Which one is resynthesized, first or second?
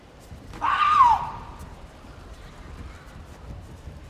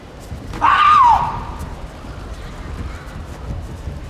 first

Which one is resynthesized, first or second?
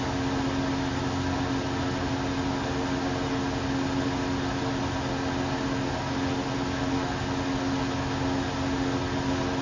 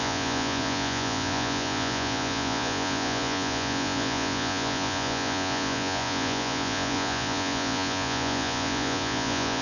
second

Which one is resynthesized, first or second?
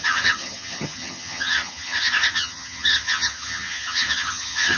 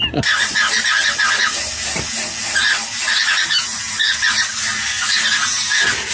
first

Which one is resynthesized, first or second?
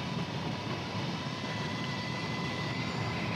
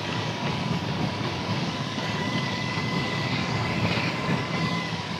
second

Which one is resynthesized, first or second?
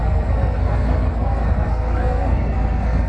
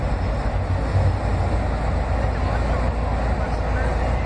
first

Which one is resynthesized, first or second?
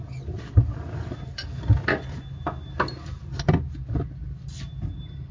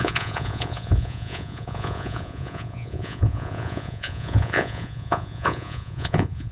second